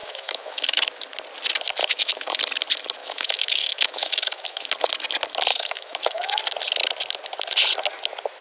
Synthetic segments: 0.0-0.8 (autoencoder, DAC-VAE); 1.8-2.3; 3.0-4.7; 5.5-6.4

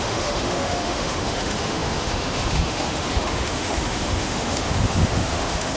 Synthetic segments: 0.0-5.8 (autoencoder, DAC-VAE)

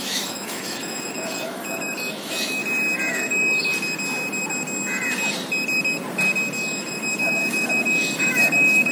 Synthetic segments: 0.0-2.6 (autoencoder, DAC-VAE); 3.1-3.7; 6.6-8.9

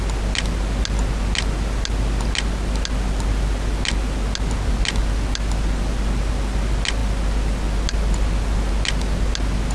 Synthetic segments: none